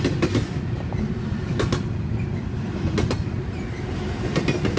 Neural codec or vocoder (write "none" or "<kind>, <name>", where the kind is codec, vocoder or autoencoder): none